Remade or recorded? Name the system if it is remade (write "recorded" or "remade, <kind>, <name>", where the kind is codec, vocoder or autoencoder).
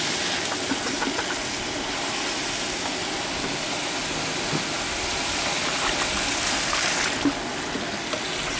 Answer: recorded